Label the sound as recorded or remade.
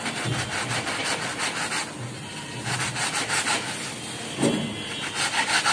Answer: recorded